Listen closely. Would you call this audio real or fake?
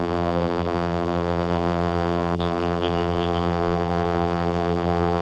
fake